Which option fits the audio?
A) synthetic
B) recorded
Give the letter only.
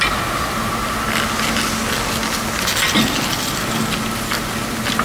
B